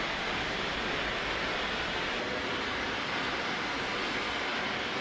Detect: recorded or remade recorded